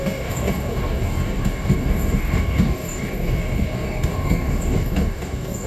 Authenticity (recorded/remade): remade